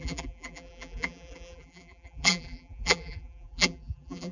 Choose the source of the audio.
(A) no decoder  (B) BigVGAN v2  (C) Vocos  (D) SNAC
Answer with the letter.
B